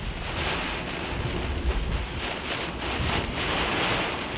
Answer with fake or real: real